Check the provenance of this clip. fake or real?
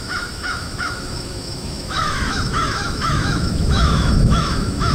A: fake